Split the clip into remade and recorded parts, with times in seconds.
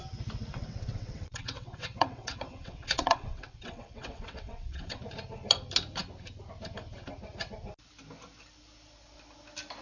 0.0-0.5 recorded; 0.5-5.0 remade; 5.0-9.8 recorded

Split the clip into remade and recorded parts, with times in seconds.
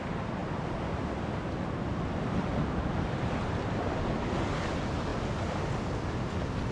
0.0-6.7 recorded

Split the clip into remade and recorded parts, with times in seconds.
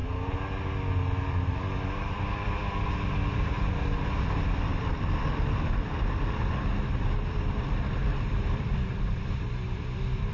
0.0-1.3 recorded; 1.3-10.3 remade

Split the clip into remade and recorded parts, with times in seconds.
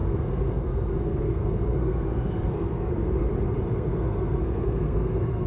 0.0-3.3 remade; 3.3-3.7 recorded; 3.7-5.5 remade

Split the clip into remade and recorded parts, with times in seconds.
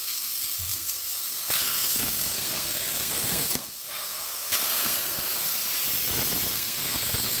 0.0-5.6 remade; 5.6-6.5 recorded; 6.5-7.4 remade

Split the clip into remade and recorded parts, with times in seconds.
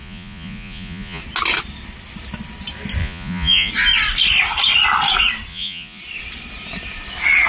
0.0-1.2 remade; 1.2-3.0 recorded; 3.0-3.7 remade; 3.7-5.5 recorded; 5.5-6.0 remade; 6.0-7.5 recorded